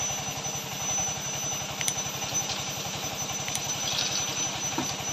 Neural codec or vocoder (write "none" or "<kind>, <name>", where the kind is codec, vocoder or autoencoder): none